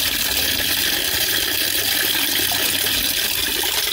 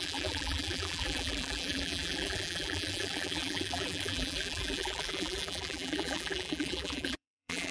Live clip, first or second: first